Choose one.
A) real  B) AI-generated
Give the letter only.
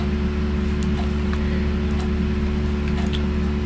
A